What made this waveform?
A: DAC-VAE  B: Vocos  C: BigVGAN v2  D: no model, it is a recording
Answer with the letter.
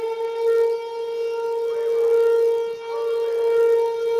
D